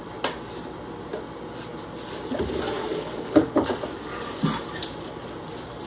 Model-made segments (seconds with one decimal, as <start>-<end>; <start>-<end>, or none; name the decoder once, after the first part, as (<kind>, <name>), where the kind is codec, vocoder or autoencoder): 2.8-3.7 (codec, DAC)

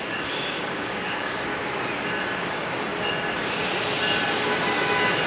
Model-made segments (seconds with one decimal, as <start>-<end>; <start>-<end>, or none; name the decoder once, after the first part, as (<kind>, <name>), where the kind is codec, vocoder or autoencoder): 0.0-1.5 (codec, DAC); 2.4-2.9

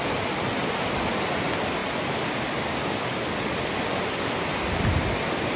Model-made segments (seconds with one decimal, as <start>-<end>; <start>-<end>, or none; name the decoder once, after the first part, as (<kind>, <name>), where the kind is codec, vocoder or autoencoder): none

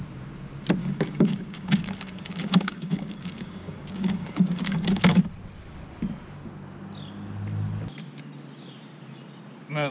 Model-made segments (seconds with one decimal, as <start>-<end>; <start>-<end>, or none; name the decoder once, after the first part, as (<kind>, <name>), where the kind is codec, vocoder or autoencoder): 0.8-5.2 (codec, DAC)